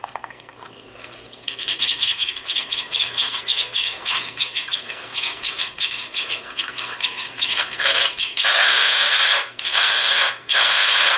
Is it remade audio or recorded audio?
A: remade